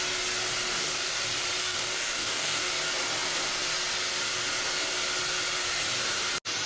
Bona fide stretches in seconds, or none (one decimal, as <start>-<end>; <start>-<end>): 0.0-0.7; 1.2-1.6; 2.7-6.7